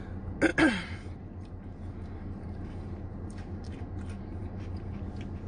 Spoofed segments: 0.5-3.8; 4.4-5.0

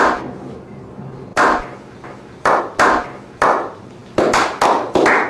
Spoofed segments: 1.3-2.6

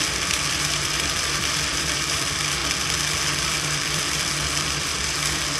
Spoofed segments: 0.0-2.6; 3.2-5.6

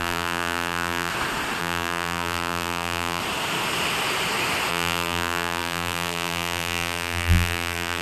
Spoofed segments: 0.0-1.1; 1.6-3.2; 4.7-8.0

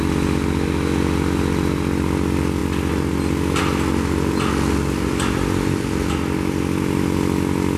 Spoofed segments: none

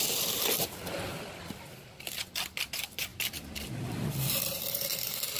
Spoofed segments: 0.0-5.4

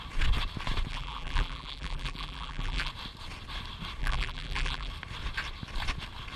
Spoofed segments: 0.9-2.9; 4.0-4.9

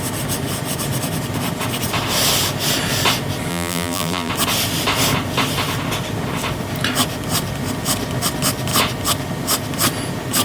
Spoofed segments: 3.5-4.3